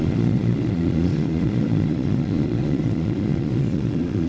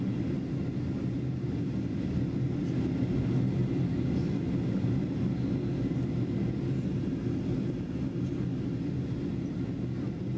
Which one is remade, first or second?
first